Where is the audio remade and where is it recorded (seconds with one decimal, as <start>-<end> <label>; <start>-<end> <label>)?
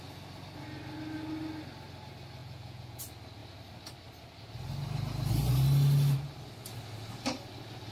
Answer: 0.0-2.4 recorded; 2.4-3.0 remade; 3.0-7.9 recorded